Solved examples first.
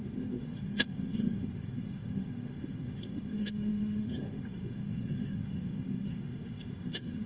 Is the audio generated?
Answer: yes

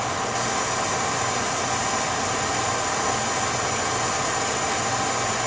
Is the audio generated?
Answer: no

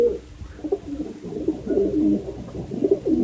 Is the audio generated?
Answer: no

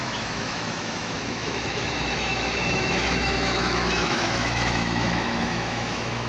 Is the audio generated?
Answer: yes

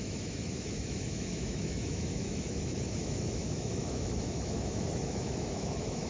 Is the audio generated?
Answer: yes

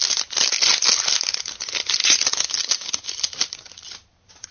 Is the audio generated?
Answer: no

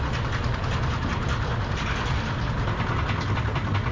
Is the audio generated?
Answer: no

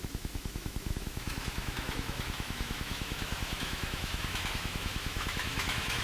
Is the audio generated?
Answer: yes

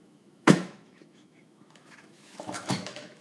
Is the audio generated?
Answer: yes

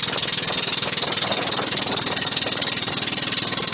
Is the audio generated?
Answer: no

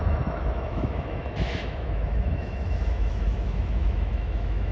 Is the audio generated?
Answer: yes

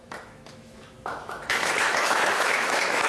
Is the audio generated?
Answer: yes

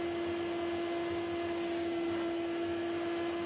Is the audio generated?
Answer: no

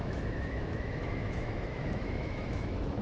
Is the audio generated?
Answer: yes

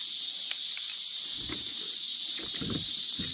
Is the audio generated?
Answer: no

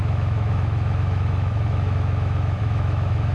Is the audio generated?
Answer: yes